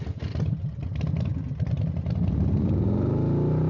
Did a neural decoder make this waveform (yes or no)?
no